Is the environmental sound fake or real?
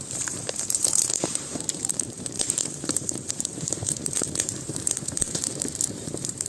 fake